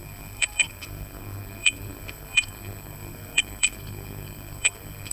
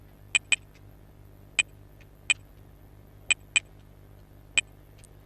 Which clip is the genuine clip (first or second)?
second